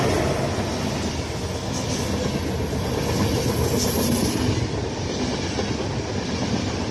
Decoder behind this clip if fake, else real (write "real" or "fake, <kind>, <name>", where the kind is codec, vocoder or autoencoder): real